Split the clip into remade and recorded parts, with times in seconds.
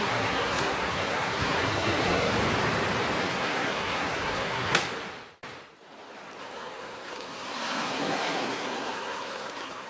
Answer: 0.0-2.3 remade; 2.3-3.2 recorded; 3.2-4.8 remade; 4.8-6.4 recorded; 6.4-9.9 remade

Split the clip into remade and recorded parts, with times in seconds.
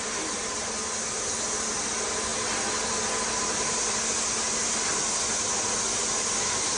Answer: 0.0-6.8 recorded